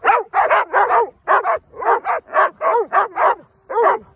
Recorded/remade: recorded